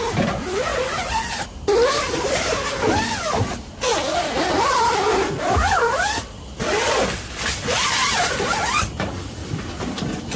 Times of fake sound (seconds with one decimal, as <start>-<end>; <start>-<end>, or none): none